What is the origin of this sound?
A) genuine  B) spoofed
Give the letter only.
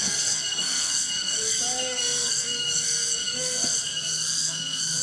B